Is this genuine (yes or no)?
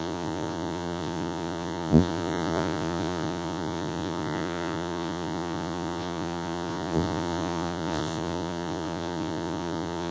no